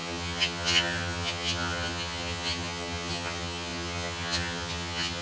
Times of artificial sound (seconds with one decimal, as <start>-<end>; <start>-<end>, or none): 0.0-5.2

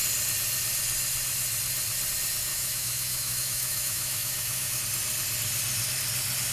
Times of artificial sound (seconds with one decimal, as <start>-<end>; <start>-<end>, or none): 2.5-4.8

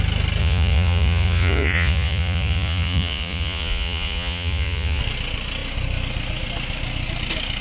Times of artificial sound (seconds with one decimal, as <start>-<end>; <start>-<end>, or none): 0.4-5.0

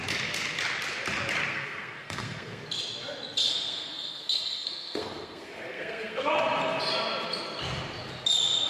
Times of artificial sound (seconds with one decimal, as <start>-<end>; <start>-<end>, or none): 1.5-2.6; 3.4-6.2

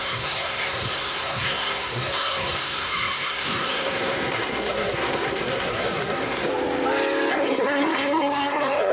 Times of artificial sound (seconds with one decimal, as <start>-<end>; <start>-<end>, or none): 0.0-6.5; 7.3-8.9